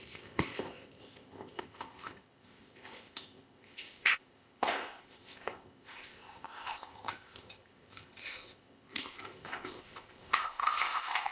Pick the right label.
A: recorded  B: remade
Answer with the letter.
B